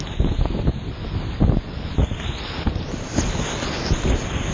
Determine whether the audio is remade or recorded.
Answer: recorded